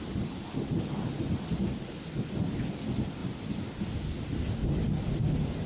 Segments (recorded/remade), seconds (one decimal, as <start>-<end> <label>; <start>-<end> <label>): 0.0-5.7 recorded